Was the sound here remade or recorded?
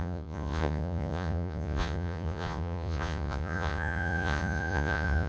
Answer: remade